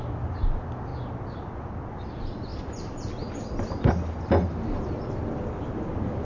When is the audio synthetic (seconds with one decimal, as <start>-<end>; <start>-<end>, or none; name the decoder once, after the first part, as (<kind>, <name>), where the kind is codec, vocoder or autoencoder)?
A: none